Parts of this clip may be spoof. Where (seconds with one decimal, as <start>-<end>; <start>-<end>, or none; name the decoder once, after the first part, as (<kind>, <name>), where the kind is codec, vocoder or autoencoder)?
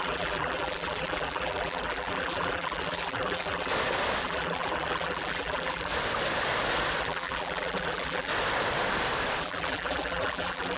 0.0-3.7 (vocoder, BigVGAN v2); 4.2-5.9; 7.0-8.3; 9.4-10.8